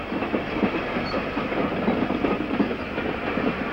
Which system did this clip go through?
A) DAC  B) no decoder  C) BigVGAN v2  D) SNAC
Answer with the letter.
B